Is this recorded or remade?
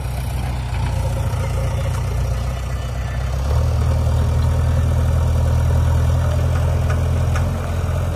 recorded